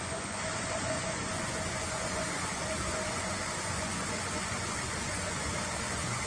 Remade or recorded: remade